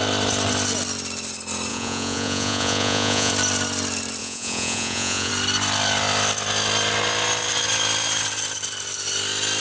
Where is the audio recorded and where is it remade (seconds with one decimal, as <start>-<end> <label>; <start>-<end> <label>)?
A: 0.0-1.7 recorded; 1.7-3.3 remade; 3.3-4.2 recorded; 4.2-5.3 remade; 5.3-9.6 recorded

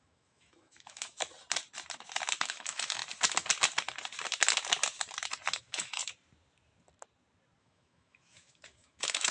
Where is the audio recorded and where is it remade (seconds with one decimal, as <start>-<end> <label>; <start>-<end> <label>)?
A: 0.0-1.3 remade; 1.3-2.4 recorded; 2.4-3.0 remade; 3.0-5.6 recorded; 5.6-6.0 remade; 6.0-7.6 recorded; 7.6-9.3 remade

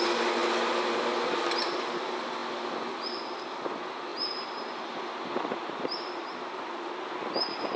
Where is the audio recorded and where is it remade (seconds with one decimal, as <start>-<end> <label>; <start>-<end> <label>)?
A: 0.0-4.1 recorded; 4.1-6.6 remade; 6.6-7.2 recorded; 7.2-7.8 remade